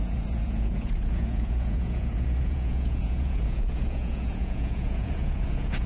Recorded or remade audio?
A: remade